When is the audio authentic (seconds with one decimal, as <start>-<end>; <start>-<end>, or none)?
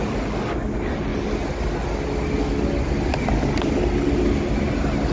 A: 0.0-5.1